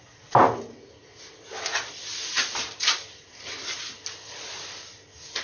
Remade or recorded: recorded